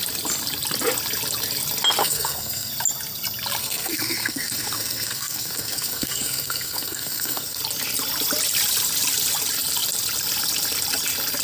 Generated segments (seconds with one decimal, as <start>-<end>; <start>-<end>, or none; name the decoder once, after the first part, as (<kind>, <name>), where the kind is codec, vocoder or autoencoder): 2.0-2.7 (codec, SNAC); 3.6-7.6